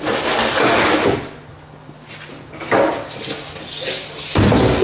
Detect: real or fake real